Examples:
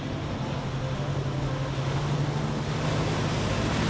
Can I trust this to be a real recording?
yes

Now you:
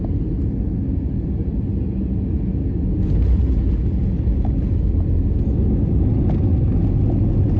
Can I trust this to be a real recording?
yes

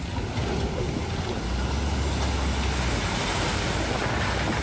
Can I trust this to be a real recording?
yes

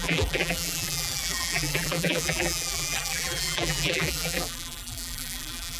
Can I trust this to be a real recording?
no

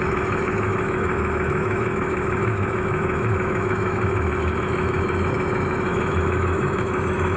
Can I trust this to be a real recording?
no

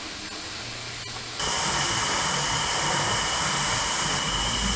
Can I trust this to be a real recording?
yes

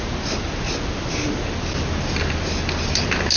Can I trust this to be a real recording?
yes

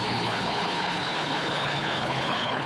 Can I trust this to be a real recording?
no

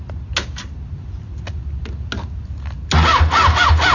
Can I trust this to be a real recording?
yes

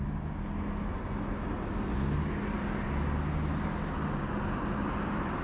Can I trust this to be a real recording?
yes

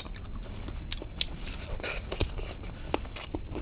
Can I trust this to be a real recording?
yes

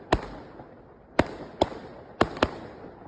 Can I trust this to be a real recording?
yes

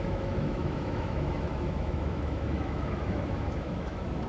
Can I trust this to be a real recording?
no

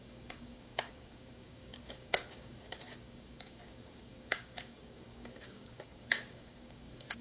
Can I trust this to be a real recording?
no